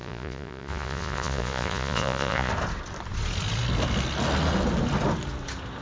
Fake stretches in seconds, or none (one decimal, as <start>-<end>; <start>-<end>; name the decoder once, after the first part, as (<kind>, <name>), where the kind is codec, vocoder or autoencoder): 0.0-2.5 (vocoder, Vocos)